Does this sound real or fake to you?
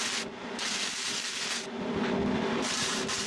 real